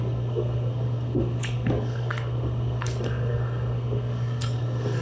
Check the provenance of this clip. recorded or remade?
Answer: remade